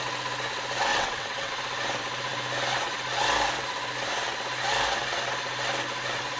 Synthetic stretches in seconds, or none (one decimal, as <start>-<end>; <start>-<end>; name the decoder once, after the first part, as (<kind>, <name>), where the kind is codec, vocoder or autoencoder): 0.9-1.5 (vocoder, WaveNeXt)